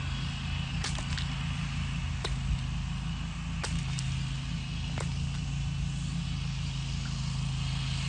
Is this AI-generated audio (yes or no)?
no